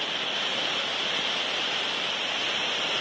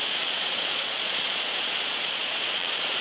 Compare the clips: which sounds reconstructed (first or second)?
second